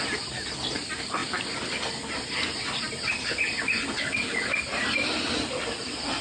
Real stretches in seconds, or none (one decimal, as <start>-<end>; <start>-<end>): 0.0-6.2